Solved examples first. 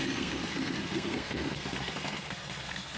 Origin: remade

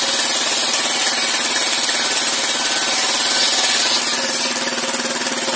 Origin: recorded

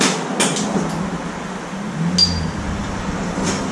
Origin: recorded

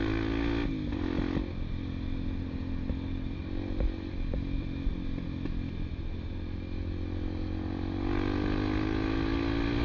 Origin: recorded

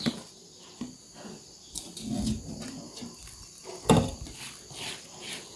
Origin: recorded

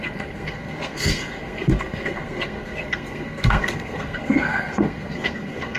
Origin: remade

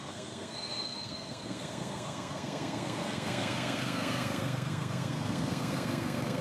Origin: remade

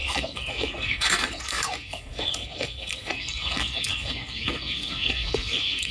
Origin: remade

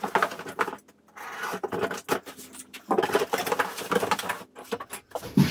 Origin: recorded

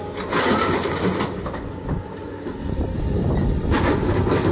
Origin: recorded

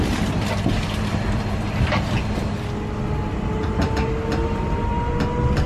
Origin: recorded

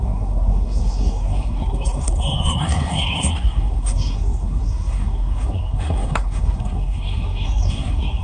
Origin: remade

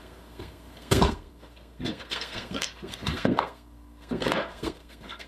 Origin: remade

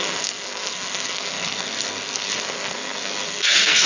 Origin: remade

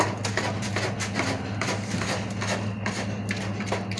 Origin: recorded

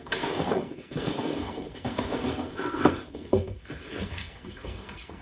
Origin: remade